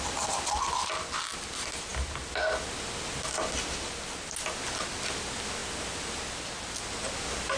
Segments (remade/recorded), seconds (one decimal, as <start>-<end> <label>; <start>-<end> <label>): 0.0-7.6 recorded